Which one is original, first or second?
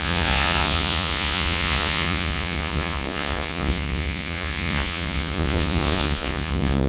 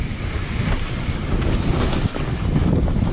second